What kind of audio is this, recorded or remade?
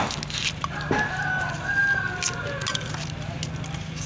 recorded